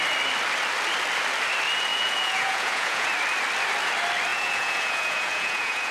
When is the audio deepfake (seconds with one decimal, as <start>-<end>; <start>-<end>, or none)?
1.9-3.1; 4.3-5.9